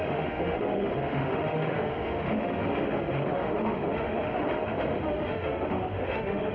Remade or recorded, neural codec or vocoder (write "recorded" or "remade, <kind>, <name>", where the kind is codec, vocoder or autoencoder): remade, autoencoder, DAC-VAE